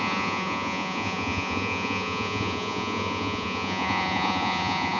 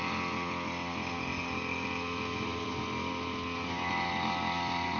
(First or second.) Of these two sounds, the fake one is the first